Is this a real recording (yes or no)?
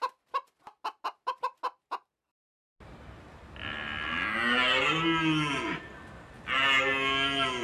yes